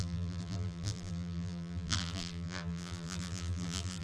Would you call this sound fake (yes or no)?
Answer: yes